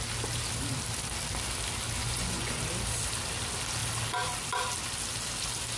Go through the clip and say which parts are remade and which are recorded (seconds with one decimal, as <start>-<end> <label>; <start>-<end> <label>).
0.0-2.0 recorded; 2.0-2.6 remade; 2.6-5.8 recorded